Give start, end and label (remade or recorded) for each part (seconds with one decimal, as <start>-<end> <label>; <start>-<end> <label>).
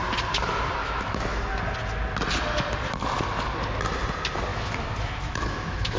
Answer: 0.0-0.8 recorded; 0.8-1.4 remade; 1.4-4.5 recorded; 4.5-6.0 remade